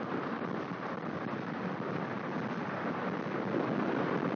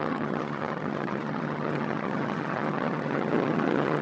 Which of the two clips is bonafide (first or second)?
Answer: first